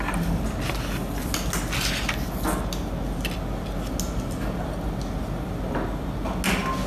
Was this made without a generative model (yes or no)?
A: yes